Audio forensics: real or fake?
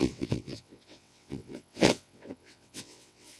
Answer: fake